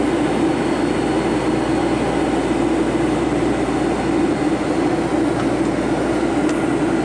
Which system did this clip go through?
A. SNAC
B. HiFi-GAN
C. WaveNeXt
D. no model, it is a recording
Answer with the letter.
D